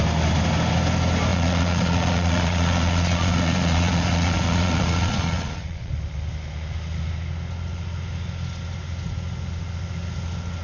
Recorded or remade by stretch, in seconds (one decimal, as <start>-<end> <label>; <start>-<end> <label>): 0.0-1.3 recorded; 1.3-5.9 remade; 5.9-10.6 recorded